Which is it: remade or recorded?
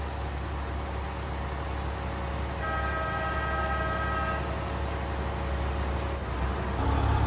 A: recorded